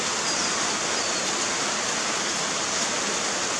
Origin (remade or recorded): recorded